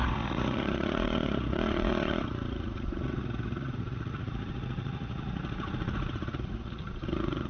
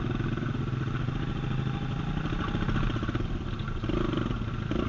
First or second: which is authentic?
second